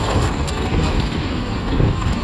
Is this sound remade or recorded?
remade